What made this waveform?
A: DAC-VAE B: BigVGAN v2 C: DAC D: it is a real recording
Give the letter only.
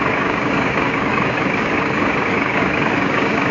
C